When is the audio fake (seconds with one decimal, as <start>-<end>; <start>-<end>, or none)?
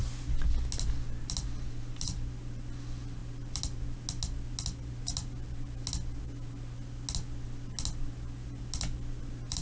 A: none